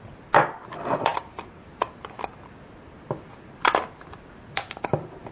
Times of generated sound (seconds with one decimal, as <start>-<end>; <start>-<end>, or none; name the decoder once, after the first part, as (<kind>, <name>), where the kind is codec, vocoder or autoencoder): none